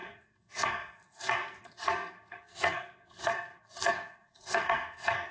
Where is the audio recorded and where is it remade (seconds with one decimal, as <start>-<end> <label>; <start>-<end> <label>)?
0.0-5.3 remade